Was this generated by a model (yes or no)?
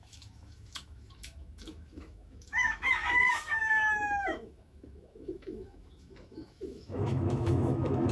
yes